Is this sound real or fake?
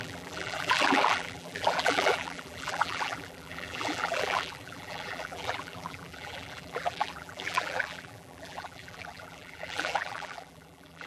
fake